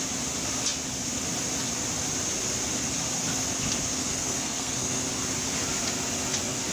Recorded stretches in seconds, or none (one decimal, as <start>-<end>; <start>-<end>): 0.0-4.0; 5.0-6.7

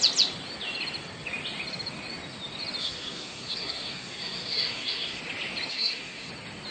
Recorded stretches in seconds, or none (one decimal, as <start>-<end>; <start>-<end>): 0.0-2.8; 5.2-5.7; 6.3-6.7